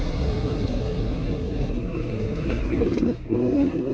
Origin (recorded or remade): remade